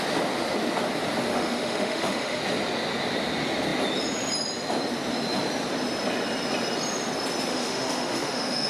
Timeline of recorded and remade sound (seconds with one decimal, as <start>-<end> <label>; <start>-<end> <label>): 0.0-1.3 recorded; 1.3-2.4 remade; 2.4-7.5 recorded; 7.5-8.7 remade